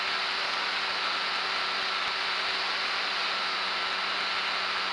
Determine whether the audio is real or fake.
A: real